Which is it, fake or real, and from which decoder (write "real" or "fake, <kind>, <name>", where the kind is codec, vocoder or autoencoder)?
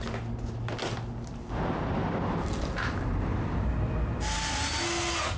real